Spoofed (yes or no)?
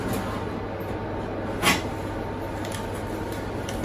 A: no